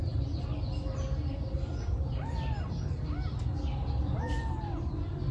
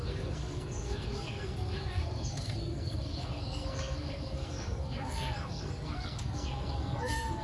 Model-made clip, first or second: second